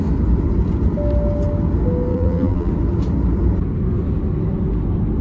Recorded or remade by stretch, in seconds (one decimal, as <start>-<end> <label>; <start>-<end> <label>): 0.0-2.1 recorded; 2.1-2.7 remade; 2.7-5.2 recorded